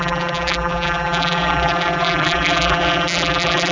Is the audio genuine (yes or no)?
no